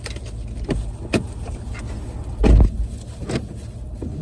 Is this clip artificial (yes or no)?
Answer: no